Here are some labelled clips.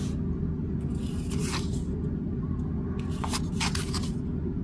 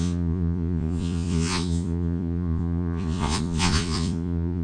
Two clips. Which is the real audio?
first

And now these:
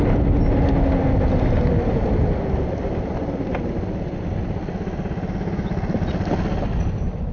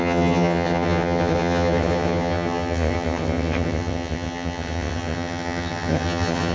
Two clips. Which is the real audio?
first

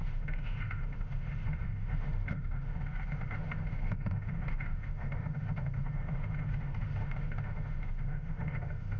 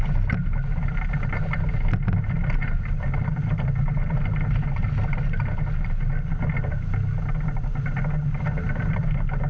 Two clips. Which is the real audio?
second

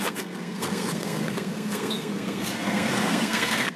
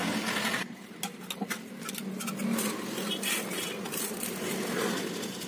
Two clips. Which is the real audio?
second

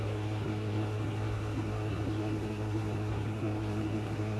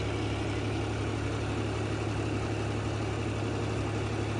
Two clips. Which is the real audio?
second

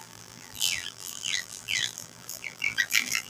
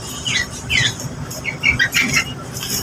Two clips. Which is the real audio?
second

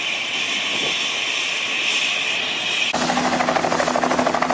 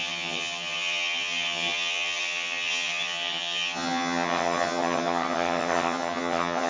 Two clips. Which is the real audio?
first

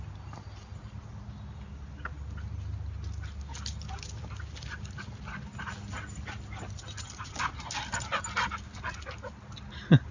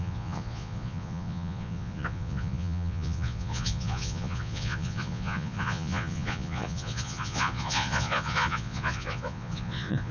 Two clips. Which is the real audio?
first